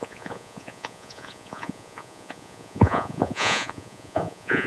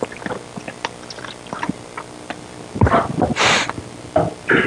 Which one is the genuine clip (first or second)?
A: second